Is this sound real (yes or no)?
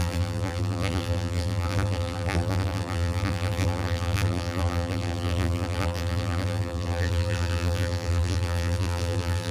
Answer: no